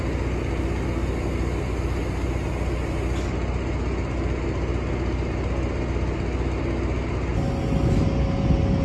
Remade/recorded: recorded